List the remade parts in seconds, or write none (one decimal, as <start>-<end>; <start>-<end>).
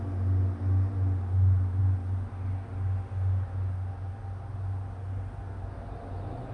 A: none